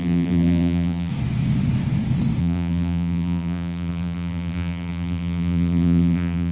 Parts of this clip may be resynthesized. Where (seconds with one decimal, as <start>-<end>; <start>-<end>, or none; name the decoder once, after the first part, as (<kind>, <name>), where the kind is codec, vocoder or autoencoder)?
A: 0.0-1.1 (vocoder, BigVGAN v2); 2.4-6.5